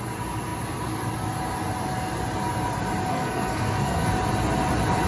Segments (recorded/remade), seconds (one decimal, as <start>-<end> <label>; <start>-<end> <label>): 0.0-3.1 recorded; 3.1-4.1 remade; 4.1-5.1 recorded